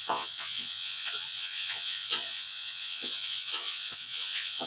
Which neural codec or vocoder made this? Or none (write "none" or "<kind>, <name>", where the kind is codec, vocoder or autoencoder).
vocoder, Vocos